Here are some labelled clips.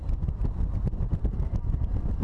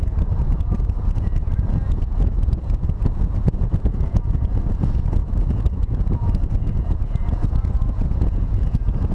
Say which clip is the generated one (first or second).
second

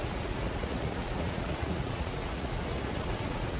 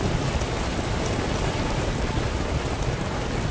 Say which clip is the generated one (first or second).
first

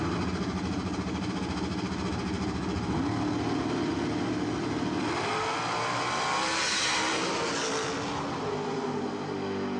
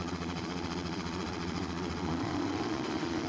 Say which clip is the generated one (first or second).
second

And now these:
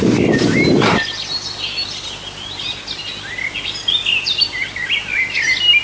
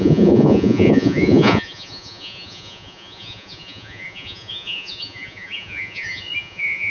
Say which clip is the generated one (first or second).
second